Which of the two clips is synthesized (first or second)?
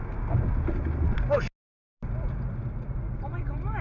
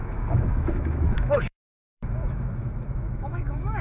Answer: second